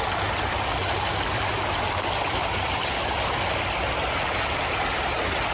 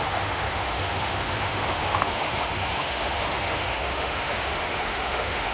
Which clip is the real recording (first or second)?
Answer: first